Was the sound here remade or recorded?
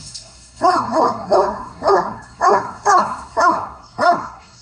remade